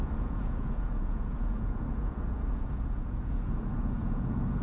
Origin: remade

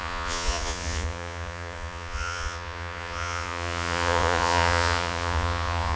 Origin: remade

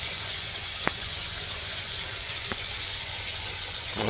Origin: remade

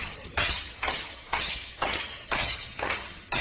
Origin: remade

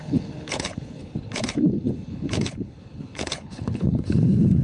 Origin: remade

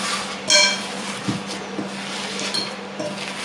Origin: recorded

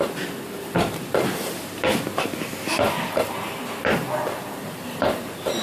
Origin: recorded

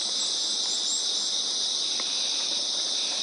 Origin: recorded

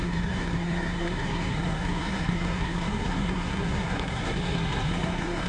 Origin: remade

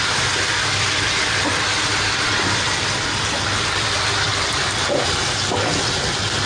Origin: remade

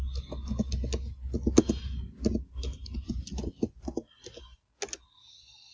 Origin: recorded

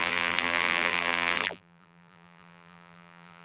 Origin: remade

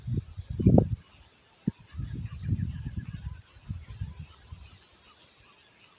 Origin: recorded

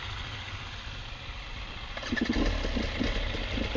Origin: recorded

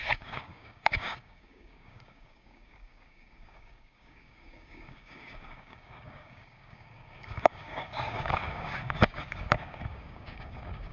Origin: remade